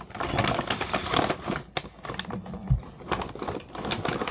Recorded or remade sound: recorded